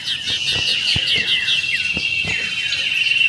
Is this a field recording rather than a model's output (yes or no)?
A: yes